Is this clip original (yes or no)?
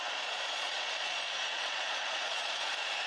no